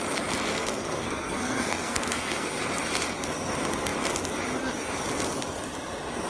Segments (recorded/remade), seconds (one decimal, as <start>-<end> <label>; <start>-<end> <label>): 0.0-0.5 recorded; 0.5-2.5 remade; 2.5-6.3 recorded

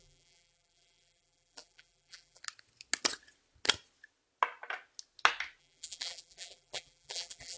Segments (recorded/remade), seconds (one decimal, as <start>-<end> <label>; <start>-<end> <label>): 0.0-2.4 remade; 2.4-5.6 recorded; 5.6-7.6 remade